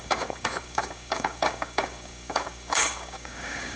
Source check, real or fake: fake